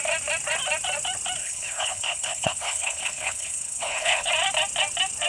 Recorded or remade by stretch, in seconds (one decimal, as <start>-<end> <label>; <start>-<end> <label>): 0.0-1.4 recorded; 1.4-4.3 remade; 4.3-5.3 recorded